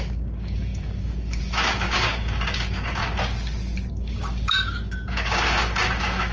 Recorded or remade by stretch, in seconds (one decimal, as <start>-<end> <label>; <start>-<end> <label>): 0.0-3.0 remade; 3.0-3.9 recorded; 3.9-6.3 remade